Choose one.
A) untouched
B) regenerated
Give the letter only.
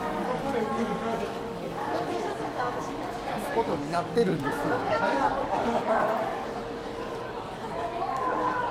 B